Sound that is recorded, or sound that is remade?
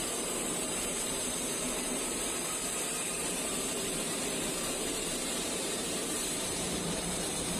remade